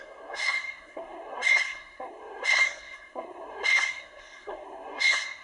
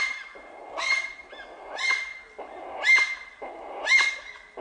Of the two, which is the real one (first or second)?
second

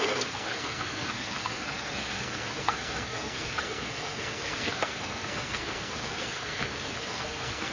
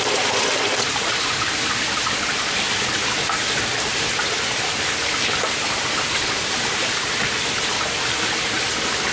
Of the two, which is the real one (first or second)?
second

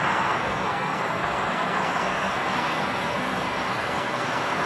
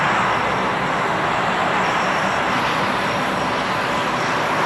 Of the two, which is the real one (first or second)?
second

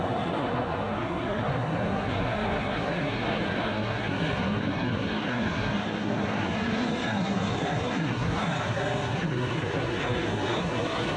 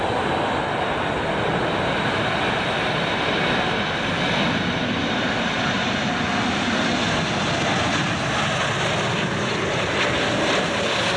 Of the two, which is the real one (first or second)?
second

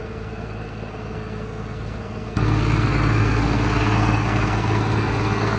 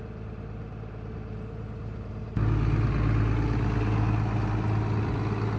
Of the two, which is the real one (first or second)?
second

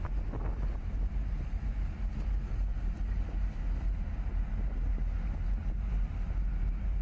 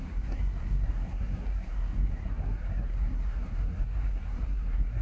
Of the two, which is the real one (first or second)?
first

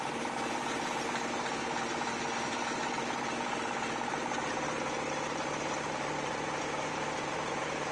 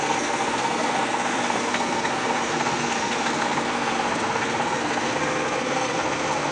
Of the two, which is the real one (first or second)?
first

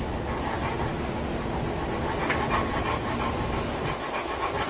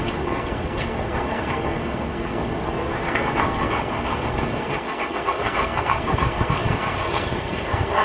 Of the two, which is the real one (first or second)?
first